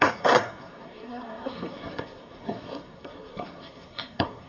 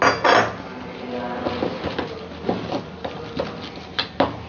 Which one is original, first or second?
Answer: second